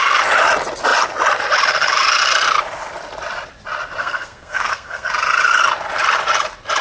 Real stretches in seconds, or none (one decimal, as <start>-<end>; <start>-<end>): 0.0-4.0; 5.1-6.8